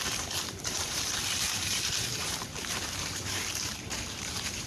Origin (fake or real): fake